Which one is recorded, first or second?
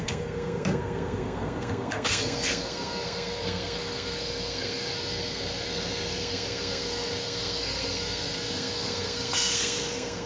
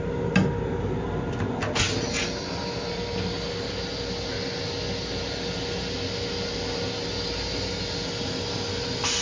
second